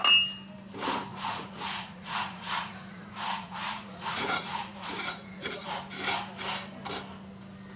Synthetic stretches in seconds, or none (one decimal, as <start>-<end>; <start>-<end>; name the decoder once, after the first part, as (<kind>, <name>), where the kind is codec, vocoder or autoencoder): 1.1-5.8 (vocoder, Vocos)